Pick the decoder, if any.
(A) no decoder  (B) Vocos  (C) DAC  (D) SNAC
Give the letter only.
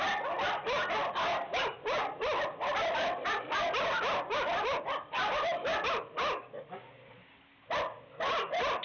A